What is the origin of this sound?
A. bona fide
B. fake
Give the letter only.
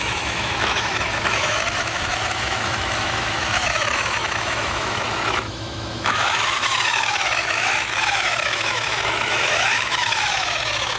B